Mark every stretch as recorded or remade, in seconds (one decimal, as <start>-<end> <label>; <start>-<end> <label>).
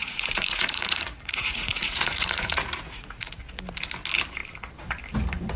0.0-3.4 remade; 3.4-5.6 recorded